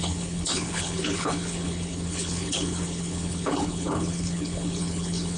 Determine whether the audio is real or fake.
fake